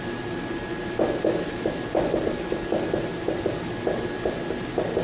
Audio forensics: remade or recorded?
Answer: recorded